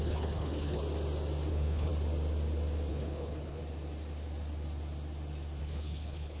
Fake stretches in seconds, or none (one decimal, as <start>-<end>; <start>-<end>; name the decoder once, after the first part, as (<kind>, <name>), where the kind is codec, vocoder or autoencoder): 0.0-0.8 (codec, HILCodec); 1.5-1.9; 2.9-3.6; 5.6-6.4